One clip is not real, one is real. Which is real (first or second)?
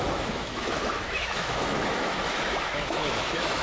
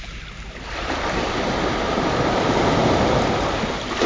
second